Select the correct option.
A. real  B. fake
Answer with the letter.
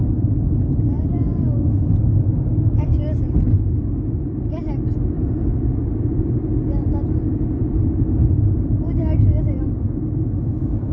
B